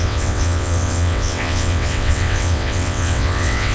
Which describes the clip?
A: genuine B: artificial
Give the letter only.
B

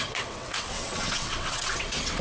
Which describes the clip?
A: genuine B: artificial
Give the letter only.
B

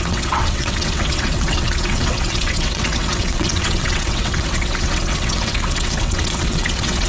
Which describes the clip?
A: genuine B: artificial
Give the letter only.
B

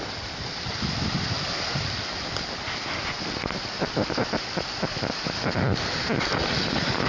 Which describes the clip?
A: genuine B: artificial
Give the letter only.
A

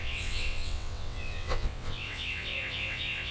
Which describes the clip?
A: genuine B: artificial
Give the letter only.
B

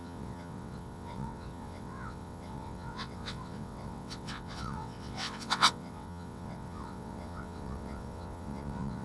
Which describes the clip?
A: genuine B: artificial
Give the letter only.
B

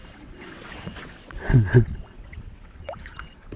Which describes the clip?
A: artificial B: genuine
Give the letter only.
A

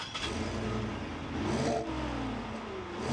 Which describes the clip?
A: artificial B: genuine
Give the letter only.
B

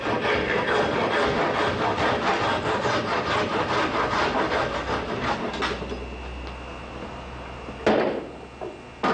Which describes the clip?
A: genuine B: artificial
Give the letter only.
A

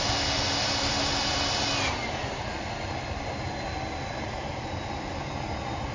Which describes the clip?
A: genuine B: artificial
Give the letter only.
A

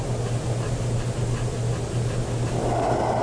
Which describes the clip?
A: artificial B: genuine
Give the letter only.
B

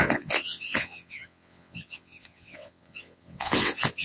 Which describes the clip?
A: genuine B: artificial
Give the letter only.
B